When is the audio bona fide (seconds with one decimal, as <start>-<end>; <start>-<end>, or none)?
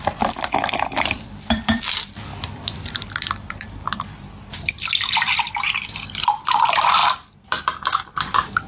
7.0-7.6